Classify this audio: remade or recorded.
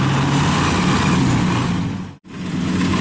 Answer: recorded